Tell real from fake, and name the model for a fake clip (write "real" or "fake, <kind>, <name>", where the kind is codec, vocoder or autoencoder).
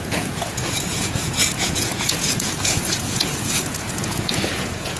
fake, vocoder, Vocos